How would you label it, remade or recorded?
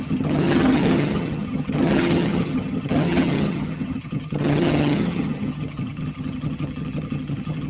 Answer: remade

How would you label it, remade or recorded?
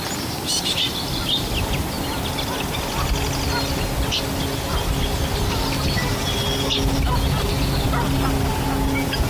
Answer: recorded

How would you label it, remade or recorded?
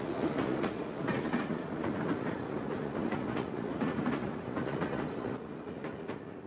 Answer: remade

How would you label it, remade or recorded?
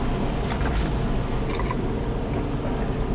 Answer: recorded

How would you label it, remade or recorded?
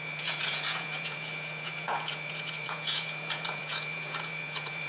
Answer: remade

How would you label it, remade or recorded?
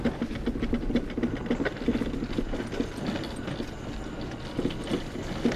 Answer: recorded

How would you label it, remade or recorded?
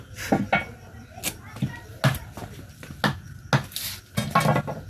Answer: recorded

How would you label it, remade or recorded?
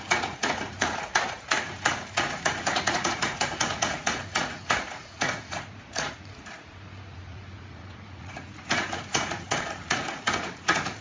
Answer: remade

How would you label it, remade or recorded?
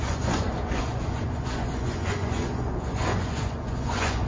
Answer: remade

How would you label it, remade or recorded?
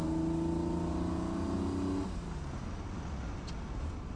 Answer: recorded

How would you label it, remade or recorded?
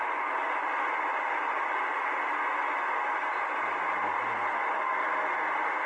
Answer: recorded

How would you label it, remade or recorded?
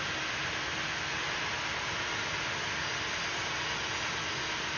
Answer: recorded